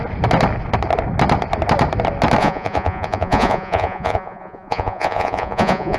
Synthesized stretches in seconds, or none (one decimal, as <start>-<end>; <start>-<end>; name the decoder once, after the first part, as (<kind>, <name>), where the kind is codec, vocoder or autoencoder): 2.4-6.0 (vocoder, Vocos)